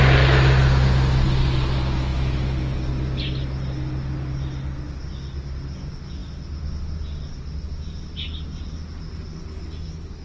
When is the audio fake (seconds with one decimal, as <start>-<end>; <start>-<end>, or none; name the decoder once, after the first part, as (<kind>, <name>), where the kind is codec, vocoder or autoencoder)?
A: none